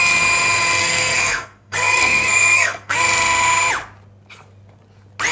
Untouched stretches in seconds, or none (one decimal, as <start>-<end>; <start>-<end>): 0.0-0.8; 3.0-5.3